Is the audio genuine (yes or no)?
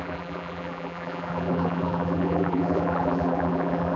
no